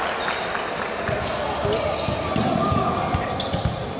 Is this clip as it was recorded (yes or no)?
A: yes